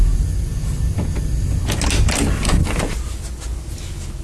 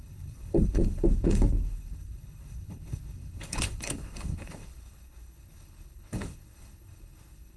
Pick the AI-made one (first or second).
second